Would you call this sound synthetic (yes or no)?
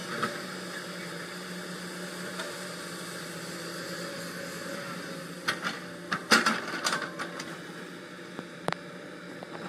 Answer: no